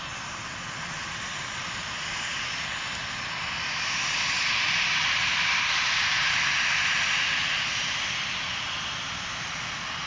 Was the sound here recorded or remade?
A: recorded